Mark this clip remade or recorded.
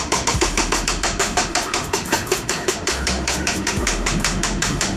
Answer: remade